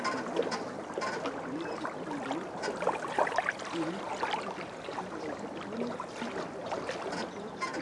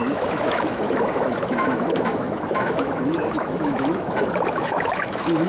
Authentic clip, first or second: first